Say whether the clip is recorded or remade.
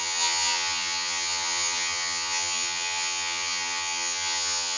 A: remade